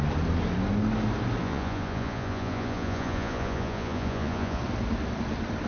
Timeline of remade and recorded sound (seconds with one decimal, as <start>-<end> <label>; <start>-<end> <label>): 0.0-1.4 recorded; 1.4-4.6 remade; 4.6-5.7 recorded